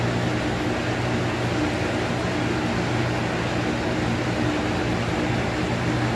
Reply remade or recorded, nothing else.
recorded